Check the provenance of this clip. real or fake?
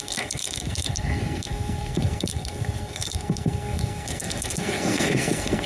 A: fake